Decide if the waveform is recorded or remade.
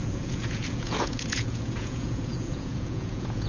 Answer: remade